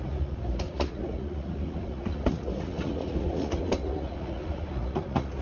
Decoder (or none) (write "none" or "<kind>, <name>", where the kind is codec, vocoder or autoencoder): vocoder, Vocos